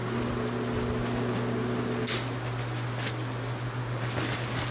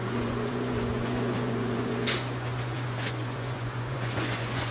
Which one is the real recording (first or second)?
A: first